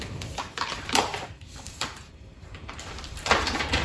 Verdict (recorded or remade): remade